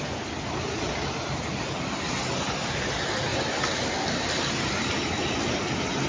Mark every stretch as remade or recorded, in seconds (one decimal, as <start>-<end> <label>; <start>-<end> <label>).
0.0-6.1 recorded